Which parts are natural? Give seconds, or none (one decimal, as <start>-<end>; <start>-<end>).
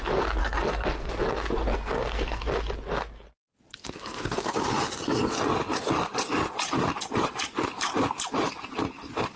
0.0-0.4; 1.1-1.7; 2.4-3.8; 4.6-9.4